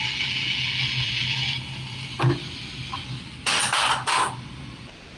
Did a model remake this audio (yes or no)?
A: no